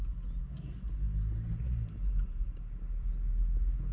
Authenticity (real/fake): real